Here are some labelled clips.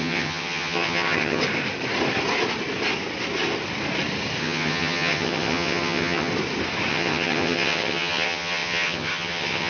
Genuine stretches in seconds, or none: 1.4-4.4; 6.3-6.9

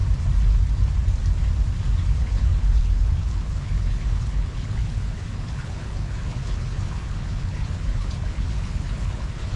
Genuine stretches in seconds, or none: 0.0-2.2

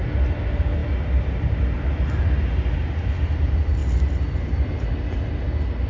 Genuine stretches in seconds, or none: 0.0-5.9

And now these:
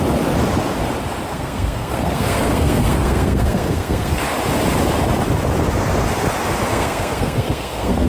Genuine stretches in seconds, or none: 0.0-1.3; 4.2-6.7